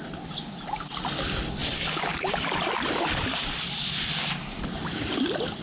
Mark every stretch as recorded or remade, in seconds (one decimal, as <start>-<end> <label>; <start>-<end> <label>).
0.0-1.6 recorded; 1.6-4.3 remade; 4.3-5.6 recorded